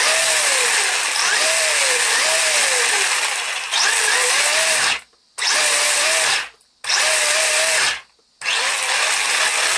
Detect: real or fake real